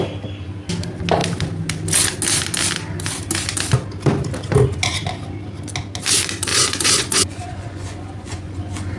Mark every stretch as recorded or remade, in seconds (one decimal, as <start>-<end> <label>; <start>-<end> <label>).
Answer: 0.0-6.5 recorded; 6.5-9.0 remade